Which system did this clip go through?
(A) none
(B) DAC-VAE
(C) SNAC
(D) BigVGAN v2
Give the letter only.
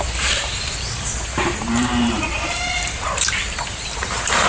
D